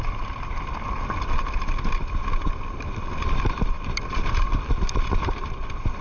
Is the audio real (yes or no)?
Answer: no